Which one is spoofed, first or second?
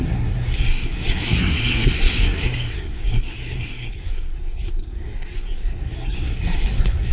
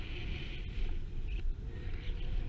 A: first